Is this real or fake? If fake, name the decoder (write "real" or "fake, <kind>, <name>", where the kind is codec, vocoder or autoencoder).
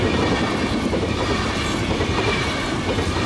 real